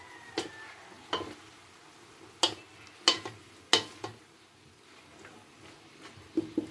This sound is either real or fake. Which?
real